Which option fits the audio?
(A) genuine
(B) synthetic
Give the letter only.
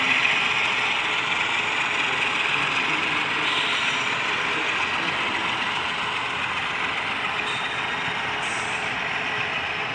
A